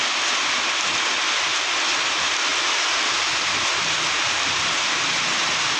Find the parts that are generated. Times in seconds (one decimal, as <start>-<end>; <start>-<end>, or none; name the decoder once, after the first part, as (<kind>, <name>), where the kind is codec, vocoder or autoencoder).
1.5-2.1 (vocoder, BigVGAN v2); 2.5-5.1